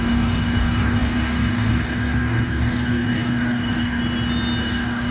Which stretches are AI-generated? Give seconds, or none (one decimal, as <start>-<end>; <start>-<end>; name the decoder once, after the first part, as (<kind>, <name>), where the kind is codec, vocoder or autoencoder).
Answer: 0.0-4.0 (codec, DAC); 4.6-5.1